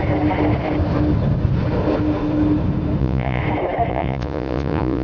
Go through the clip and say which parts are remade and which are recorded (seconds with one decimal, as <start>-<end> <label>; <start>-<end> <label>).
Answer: 0.0-3.0 recorded; 3.0-3.4 remade; 3.4-3.9 recorded; 3.9-5.0 remade